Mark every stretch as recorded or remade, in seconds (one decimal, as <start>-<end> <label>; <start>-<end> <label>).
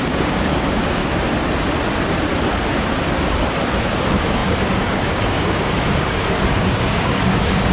0.0-1.0 remade; 1.0-3.9 recorded; 3.9-7.7 remade